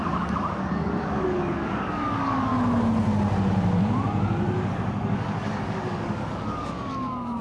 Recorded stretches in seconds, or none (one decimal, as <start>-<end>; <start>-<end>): 2.5-4.7